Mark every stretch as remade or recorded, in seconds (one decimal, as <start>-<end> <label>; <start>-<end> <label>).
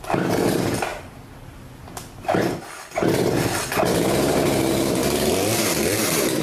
0.0-6.4 recorded